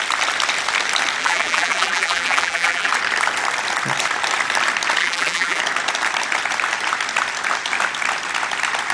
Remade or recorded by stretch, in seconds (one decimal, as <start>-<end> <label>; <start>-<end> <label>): 0.0-1.2 recorded; 1.2-2.9 remade; 2.9-5.0 recorded; 5.0-5.6 remade; 5.6-8.9 recorded

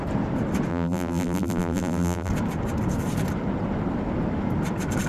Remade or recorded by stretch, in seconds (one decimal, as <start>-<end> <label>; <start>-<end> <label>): 0.0-0.7 recorded; 0.7-2.3 remade; 2.3-5.1 recorded